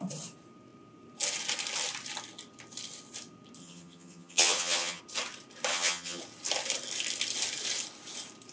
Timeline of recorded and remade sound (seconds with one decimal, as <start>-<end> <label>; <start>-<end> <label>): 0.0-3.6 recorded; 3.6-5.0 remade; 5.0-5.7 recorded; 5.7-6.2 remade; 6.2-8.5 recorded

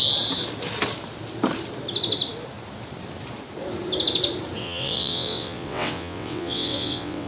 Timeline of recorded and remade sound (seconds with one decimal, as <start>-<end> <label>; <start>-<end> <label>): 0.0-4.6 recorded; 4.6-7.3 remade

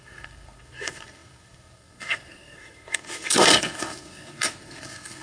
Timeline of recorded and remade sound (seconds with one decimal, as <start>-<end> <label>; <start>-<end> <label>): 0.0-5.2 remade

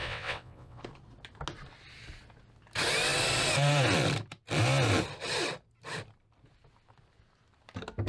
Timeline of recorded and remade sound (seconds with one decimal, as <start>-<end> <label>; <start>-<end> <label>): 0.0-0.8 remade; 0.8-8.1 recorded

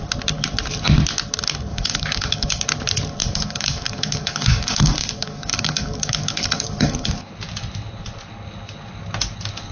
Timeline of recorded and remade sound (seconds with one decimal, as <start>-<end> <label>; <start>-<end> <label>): 0.0-1.7 recorded; 1.7-2.6 remade; 2.6-3.2 recorded; 3.2-7.3 remade; 7.3-9.7 recorded